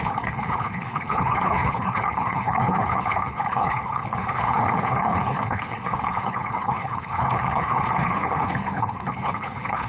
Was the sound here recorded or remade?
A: remade